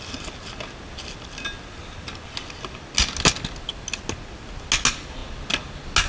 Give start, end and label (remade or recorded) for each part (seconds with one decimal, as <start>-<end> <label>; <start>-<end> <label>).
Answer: 0.0-6.1 recorded